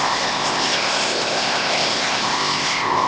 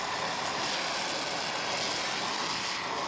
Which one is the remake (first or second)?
first